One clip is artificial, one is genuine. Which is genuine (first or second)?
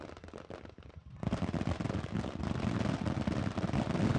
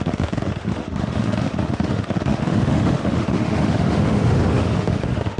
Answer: first